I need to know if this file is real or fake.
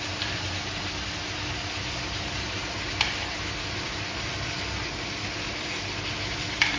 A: real